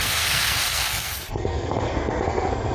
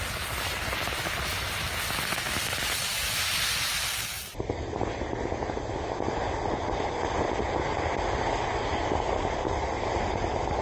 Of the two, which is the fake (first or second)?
first